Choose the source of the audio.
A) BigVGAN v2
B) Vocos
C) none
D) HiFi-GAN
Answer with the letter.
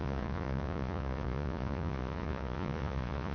B